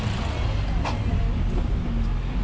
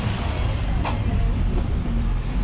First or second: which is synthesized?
second